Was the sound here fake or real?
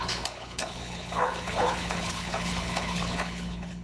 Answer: fake